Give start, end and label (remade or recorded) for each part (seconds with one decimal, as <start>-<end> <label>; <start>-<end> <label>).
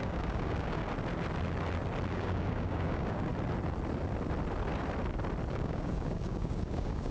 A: 0.0-0.8 remade; 0.8-2.1 recorded; 2.1-3.3 remade; 3.3-5.5 recorded; 5.5-7.1 remade